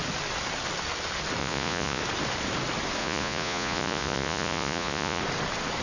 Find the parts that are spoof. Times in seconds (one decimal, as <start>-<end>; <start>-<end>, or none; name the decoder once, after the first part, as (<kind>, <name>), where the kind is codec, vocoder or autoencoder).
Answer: 1.4-2.0 (vocoder, Vocos); 3.0-5.2